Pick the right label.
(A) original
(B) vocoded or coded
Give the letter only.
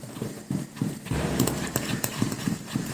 B